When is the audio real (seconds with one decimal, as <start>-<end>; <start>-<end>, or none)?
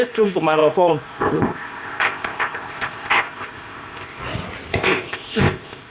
4.2-4.7